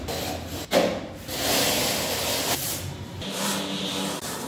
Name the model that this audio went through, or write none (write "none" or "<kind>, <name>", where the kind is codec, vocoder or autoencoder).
none